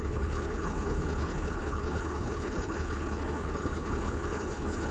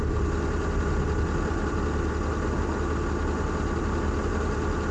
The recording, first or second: second